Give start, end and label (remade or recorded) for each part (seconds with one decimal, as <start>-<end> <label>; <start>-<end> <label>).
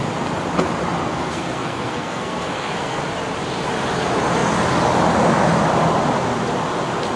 0.0-1.0 recorded; 1.0-3.0 remade; 3.0-7.2 recorded